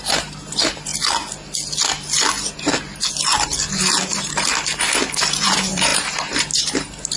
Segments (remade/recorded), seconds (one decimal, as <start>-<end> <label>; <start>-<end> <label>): 0.0-0.9 remade; 0.9-5.2 recorded; 5.2-7.2 remade